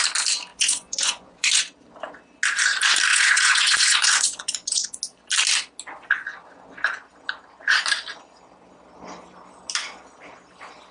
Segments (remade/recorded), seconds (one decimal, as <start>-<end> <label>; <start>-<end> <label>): 0.0-0.5 recorded; 0.5-1.6 remade; 1.6-3.1 recorded; 3.1-5.0 remade; 5.0-10.9 recorded